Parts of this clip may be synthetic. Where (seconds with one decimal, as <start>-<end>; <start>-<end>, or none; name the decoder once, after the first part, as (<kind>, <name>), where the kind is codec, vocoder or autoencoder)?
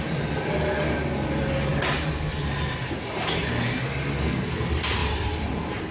5.0-5.9 (vocoder, BigVGAN v2)